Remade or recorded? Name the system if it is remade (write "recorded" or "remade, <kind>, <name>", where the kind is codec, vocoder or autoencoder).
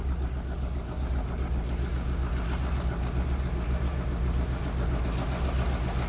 recorded